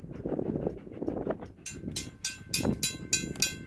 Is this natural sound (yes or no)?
yes